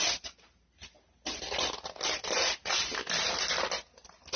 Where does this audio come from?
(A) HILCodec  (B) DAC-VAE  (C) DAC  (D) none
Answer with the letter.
D